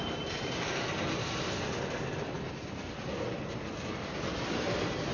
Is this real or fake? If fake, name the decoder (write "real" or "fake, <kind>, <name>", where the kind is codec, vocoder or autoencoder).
real